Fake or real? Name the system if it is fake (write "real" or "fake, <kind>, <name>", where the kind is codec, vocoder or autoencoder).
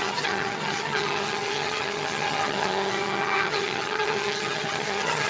fake, vocoder, HiFi-GAN